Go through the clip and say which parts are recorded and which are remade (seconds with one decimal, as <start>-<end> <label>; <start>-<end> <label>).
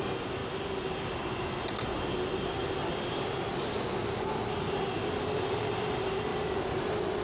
0.0-7.2 recorded